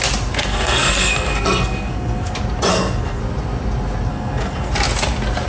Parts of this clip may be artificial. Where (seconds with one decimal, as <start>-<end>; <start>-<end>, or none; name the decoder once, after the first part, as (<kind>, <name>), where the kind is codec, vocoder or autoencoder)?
0.4-2.3 (codec, SNAC); 2.7-3.2; 4.1-4.7